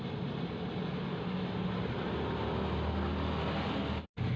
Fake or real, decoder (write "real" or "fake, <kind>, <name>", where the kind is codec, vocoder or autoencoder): real